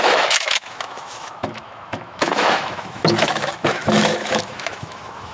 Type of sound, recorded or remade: remade